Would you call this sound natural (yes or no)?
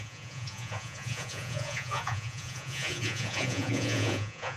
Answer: no